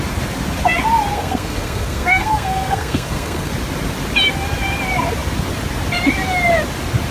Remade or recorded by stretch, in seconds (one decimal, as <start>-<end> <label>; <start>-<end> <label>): 0.0-1.1 recorded; 1.1-3.5 remade; 3.5-7.1 recorded